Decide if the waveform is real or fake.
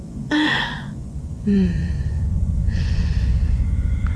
fake